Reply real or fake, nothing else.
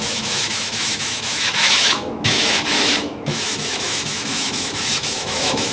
fake